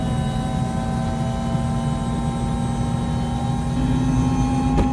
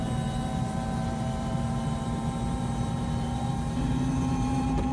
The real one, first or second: first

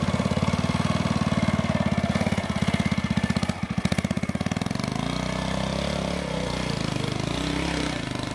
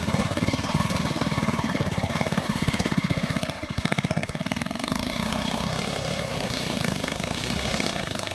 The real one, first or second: first